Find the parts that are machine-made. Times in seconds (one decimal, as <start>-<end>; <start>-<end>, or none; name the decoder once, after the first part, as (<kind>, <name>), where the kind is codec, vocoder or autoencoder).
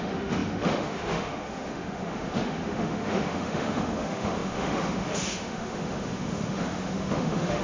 0.0-7.6 (autoencoder, DAC-VAE)